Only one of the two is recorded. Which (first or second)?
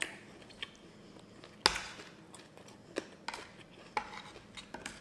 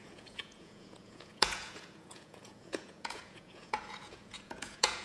first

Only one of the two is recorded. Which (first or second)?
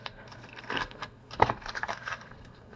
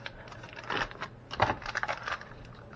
second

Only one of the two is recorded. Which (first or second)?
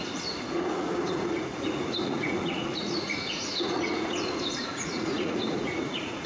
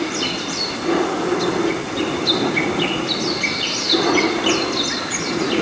second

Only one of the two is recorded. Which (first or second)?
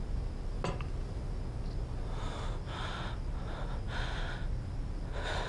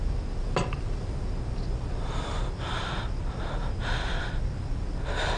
first